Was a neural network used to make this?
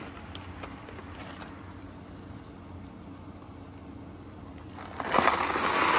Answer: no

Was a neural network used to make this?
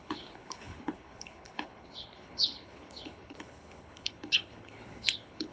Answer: yes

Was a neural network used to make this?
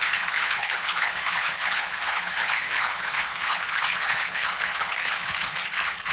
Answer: yes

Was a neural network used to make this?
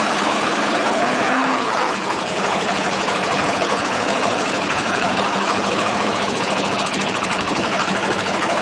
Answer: yes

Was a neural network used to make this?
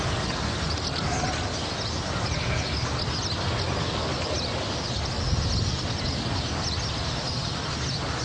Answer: no